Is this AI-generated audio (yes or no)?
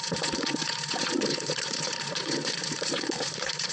yes